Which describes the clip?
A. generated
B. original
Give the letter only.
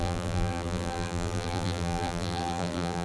A